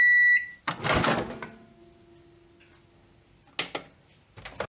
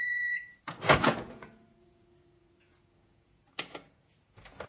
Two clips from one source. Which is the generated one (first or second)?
second